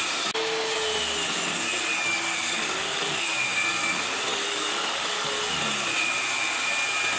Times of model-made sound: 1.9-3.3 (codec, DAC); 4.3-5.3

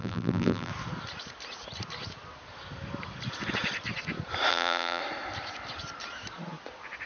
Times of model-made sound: 0.0-0.7 (vocoder, BigVGAN v2); 4.5-5.0

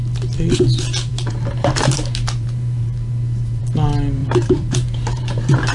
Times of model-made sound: 1.1-3.6 (vocoder, BigVGAN v2); 4.2-5.7

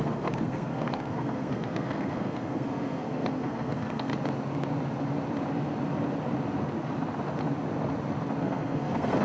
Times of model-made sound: 0.0-4.1 (codec, SNAC); 8.4-9.2

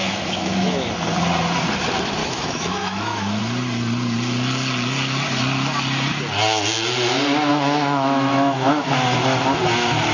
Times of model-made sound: 0.0-0.9 (autoencoder, DAC-VAE); 2.2-3.4; 7.5-8.7

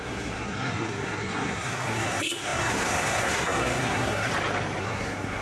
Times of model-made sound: 0.0-4.3 (codec, SNAC); 4.8-5.4

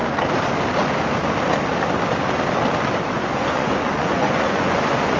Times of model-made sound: 3.1-5.2 (vocoder, Vocos)